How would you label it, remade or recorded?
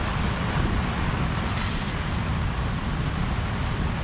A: recorded